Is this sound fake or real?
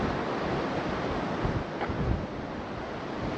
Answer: real